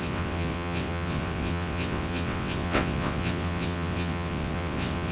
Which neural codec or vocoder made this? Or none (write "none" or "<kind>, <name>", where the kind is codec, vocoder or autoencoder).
vocoder, WaveNeXt